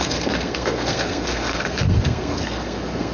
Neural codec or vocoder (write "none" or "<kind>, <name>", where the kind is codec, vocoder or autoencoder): codec, SNAC